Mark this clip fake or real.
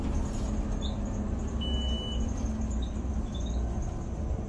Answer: real